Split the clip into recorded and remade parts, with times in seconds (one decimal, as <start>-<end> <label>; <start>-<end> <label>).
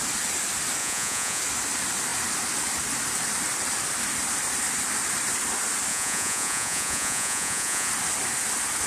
0.0-0.8 recorded; 0.8-1.4 remade; 1.4-5.9 recorded; 5.9-7.9 remade; 7.9-8.9 recorded